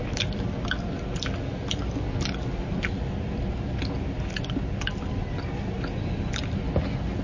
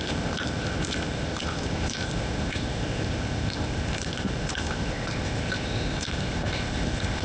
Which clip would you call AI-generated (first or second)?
second